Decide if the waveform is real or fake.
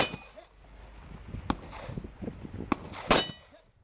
real